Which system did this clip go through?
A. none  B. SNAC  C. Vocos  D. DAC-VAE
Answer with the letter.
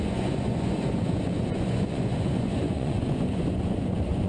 C